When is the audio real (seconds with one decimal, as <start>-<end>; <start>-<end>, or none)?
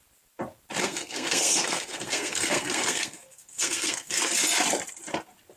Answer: 0.0-0.8; 4.2-5.6